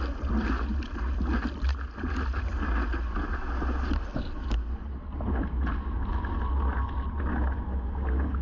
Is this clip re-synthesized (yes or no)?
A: no